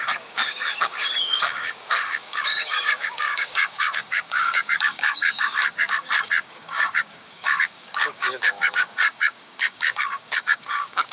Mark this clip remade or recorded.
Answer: remade